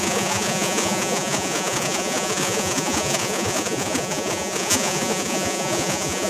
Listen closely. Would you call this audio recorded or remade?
remade